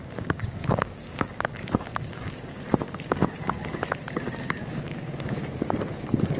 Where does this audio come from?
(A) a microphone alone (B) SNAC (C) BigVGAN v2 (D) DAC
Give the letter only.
D